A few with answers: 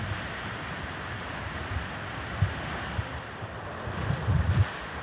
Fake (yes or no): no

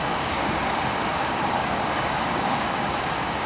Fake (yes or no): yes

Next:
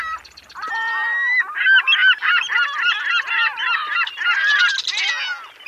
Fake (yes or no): no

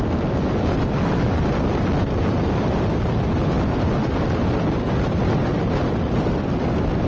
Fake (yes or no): no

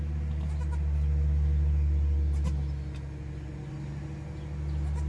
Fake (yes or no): no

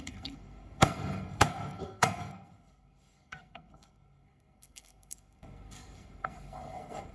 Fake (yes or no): yes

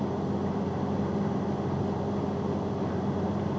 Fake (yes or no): no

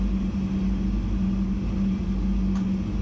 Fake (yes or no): no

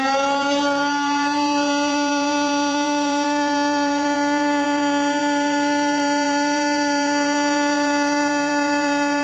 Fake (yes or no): yes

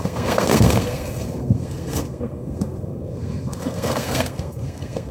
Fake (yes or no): yes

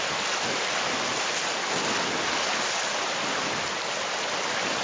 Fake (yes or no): no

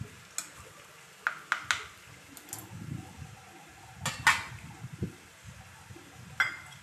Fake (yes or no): no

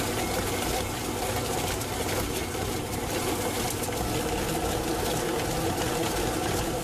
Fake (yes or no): no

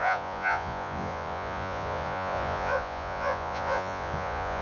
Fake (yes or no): yes